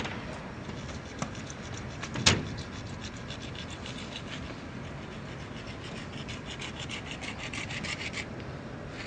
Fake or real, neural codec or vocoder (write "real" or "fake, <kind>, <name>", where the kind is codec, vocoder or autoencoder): real